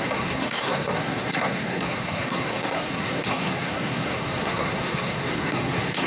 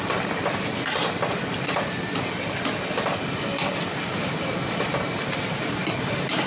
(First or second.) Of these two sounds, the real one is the second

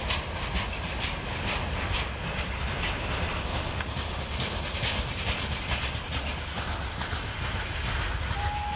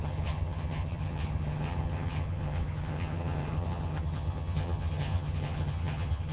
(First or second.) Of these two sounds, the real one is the first